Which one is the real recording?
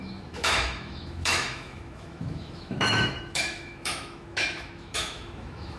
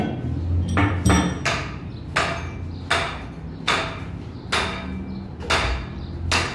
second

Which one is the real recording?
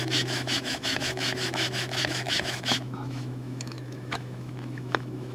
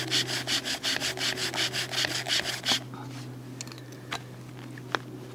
second